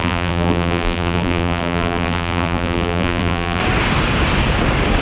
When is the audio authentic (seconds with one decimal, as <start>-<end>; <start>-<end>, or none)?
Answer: 3.6-5.0